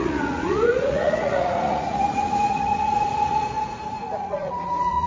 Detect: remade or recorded remade